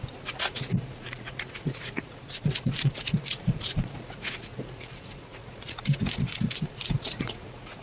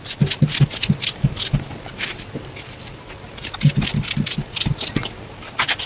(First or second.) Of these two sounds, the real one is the second